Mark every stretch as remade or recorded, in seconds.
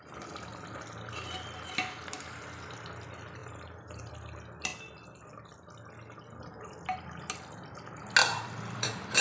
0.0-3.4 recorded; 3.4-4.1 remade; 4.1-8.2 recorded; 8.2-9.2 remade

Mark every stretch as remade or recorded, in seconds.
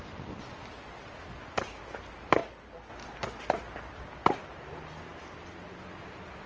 0.0-6.5 recorded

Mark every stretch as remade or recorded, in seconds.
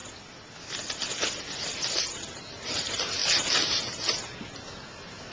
0.0-1.3 recorded; 1.3-3.2 remade; 3.2-5.3 recorded